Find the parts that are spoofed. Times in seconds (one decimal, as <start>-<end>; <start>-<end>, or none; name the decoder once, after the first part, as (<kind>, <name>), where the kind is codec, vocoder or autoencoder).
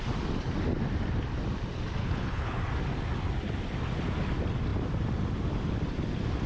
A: 2.0-2.6 (codec, HILCodec)